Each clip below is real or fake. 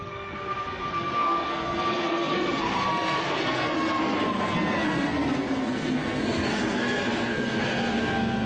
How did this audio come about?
fake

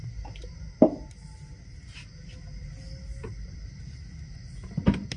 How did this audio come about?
real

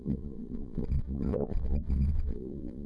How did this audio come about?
fake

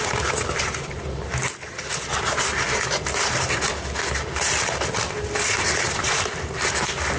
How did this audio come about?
real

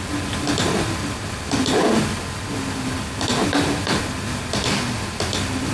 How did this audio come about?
real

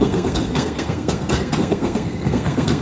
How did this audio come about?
fake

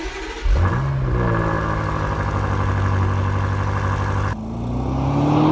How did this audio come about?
real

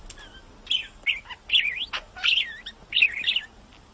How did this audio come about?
real